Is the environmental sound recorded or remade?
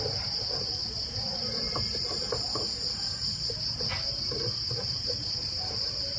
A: recorded